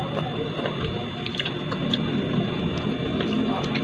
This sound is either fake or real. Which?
real